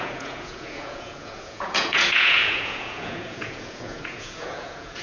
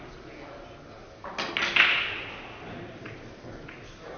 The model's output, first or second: first